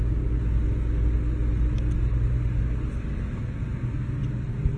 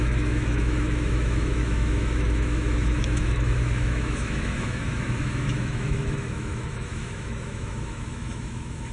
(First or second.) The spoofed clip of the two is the second